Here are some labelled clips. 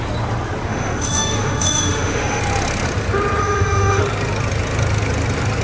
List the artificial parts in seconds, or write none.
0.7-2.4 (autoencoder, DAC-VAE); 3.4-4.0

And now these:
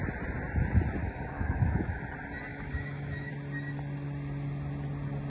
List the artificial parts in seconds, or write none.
1.0-2.0 (autoencoder, DAC-VAE); 2.5-3.3

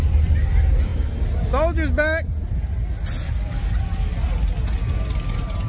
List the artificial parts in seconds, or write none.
none

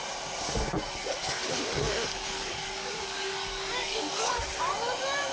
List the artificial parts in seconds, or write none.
1.2-4.4 (codec, DAC)

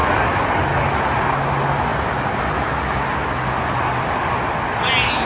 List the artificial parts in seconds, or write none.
none

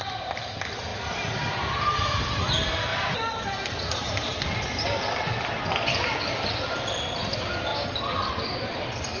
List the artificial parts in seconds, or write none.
none

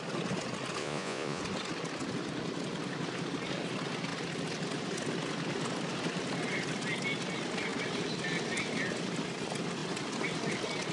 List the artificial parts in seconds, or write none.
0.8-1.4 (vocoder, Vocos)